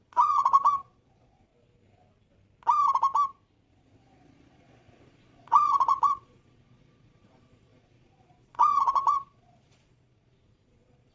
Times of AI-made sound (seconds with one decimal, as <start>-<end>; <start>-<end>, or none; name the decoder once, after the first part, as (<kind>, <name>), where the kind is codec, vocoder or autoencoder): 0.0-1.5 (vocoder, Vocos); 3.7-11.1